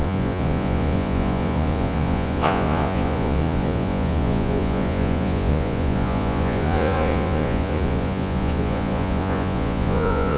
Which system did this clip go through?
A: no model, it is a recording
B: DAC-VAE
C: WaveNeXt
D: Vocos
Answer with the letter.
D